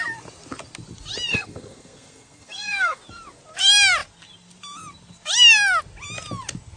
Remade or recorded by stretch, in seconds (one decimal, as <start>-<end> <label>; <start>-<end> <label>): 0.0-1.3 recorded; 1.3-3.0 remade; 3.0-6.8 recorded